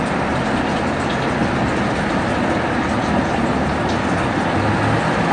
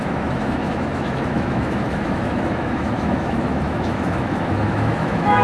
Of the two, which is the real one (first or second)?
first